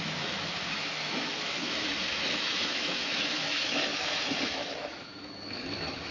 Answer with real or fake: fake